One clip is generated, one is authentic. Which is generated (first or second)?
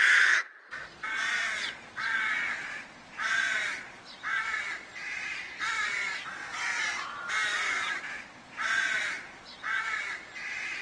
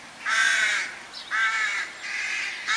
first